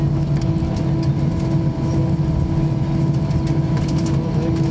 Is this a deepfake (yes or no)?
no